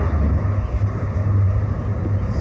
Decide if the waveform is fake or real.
real